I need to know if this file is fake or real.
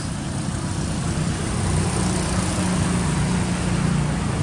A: real